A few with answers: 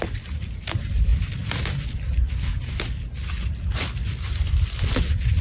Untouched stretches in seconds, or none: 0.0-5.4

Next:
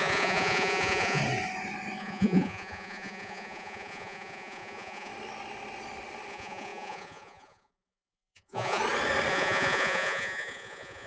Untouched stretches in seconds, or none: 1.2-2.0; 5.1-6.3; 8.8-9.3

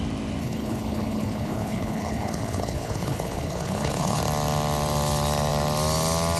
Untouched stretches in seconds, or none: 0.0-0.4; 4.2-6.4